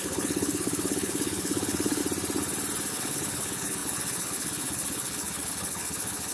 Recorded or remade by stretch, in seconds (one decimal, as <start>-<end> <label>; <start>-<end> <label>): 0.0-2.0 remade; 2.0-2.9 recorded; 2.9-6.3 remade